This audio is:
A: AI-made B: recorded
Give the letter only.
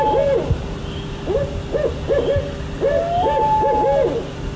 B